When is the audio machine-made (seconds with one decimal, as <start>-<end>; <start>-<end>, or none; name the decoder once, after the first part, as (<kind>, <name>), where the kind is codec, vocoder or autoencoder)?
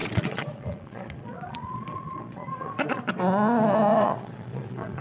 0.0-3.0 (vocoder, Vocos); 3.9-5.0